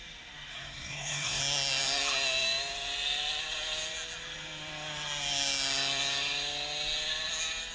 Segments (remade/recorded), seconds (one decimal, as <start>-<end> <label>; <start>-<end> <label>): 0.0-0.5 recorded; 0.5-1.4 remade; 1.4-7.7 recorded